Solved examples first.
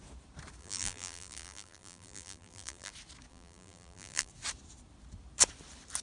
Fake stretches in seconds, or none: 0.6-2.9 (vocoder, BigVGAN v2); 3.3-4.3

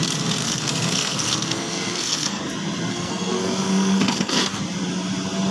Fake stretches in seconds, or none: 0.4-2.4 (codec, SNAC); 2.9-4.6

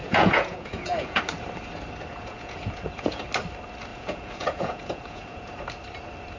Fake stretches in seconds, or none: 0.0-1.2 (vocoder, Vocos); 2.1-3.2; 3.9-5.5

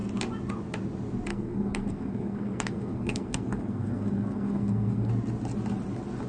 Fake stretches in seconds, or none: 1.3-5.1 (codec, SNAC)

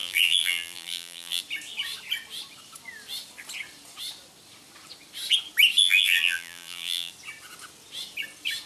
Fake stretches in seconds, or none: 0.0-1.4 (vocoder, BigVGAN v2); 5.8-7.1

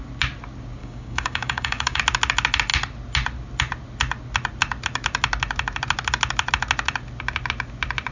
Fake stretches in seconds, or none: 0.8-2.0 (codec, DAC)